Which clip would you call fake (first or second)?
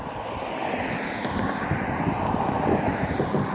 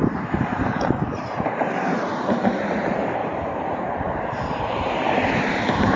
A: second